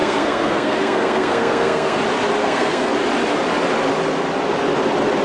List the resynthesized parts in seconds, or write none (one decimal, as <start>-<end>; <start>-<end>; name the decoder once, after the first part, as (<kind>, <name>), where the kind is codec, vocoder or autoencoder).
0.0-2.0 (codec, SNAC); 2.4-2.9